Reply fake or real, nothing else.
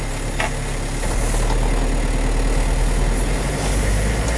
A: real